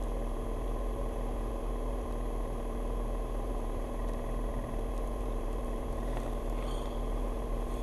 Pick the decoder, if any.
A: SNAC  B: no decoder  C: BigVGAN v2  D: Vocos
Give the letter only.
C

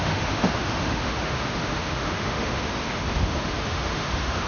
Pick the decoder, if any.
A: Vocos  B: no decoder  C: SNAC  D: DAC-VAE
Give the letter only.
D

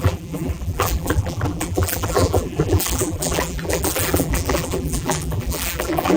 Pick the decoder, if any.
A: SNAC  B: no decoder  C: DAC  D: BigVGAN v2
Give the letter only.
D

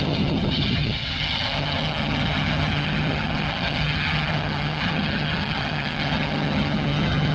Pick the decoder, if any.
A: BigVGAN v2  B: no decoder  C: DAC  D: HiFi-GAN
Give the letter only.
D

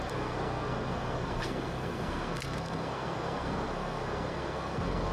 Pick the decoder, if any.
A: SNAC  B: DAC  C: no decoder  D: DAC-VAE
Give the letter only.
A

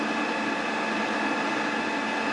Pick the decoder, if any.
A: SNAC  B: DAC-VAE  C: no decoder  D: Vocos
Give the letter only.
C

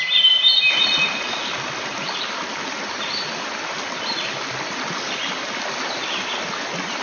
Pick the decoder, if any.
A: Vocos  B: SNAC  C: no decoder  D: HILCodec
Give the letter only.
C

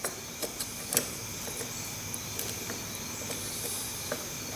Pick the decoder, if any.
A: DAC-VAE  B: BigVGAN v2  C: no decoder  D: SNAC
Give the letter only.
C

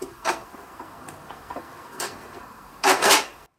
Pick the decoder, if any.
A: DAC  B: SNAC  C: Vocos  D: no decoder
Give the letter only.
B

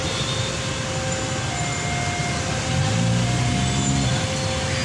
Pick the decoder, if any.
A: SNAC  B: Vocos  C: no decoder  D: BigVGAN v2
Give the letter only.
C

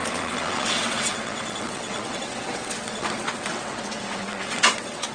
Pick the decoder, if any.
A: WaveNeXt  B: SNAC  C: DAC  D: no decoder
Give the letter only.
A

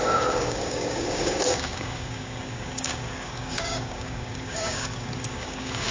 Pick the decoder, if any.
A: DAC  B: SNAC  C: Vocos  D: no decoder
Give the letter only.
A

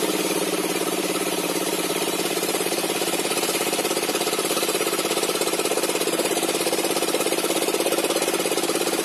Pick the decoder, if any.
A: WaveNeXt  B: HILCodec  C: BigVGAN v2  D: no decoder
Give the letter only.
C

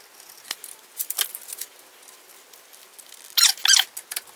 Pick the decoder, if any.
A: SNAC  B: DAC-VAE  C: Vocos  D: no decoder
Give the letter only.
D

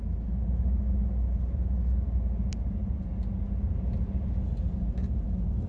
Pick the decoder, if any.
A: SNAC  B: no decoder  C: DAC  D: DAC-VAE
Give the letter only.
B